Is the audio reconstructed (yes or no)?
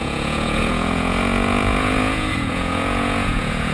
yes